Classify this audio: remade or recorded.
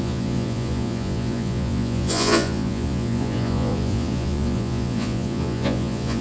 remade